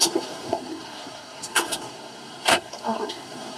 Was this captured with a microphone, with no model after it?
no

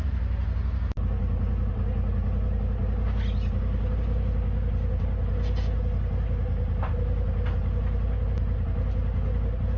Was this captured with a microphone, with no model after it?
yes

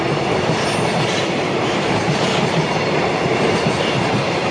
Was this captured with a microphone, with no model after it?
no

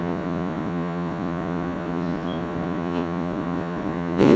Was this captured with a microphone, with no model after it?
no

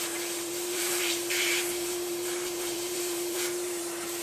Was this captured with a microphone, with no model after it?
no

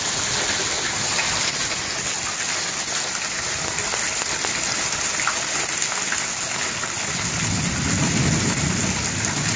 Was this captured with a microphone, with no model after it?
yes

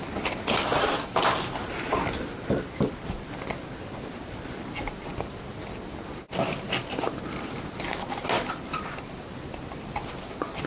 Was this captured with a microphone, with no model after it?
yes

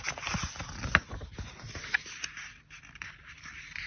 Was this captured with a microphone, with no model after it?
yes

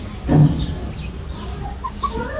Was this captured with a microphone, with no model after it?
yes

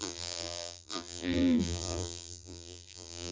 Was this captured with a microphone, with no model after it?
no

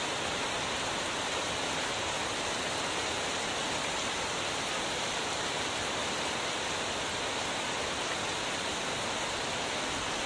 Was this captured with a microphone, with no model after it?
yes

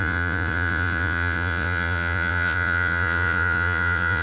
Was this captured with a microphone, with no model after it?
no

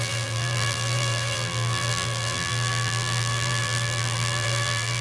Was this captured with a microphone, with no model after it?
no